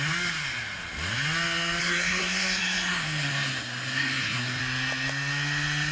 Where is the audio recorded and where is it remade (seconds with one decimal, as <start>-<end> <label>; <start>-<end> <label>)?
0.0-1.8 recorded; 1.8-4.6 remade; 4.6-5.9 recorded